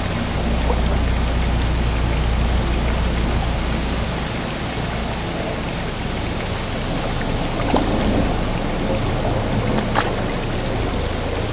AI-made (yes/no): no